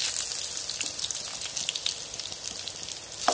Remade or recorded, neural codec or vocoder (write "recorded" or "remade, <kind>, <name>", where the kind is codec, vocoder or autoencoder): recorded